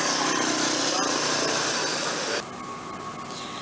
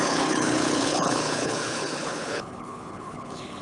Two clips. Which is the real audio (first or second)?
first